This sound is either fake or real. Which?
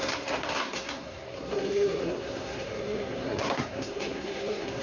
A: fake